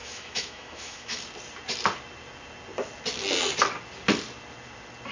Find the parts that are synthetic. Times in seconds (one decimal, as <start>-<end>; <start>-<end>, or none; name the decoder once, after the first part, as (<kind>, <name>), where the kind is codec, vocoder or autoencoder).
0.0-1.2 (autoencoder, DAC-VAE)